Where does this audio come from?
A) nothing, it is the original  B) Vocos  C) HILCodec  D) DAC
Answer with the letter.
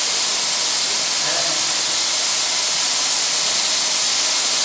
A